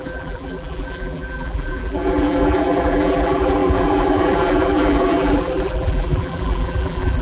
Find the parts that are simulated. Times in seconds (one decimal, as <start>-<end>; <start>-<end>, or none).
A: 0.0-7.2